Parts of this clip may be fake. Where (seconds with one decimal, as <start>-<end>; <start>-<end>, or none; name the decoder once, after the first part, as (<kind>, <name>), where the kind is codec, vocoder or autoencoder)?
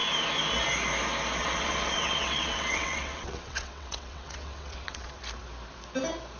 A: 1.4-5.2 (vocoder, WaveNeXt)